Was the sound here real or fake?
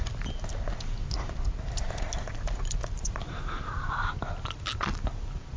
real